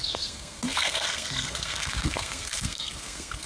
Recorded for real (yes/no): no